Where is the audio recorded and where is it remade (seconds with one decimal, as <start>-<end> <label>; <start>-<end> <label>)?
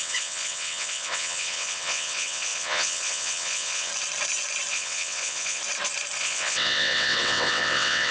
0.0-3.9 remade; 3.9-4.7 recorded; 4.7-5.6 remade; 5.6-6.2 recorded; 6.2-8.1 remade